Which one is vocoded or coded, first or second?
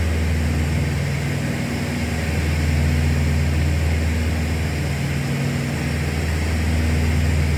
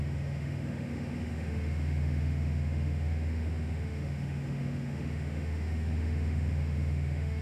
second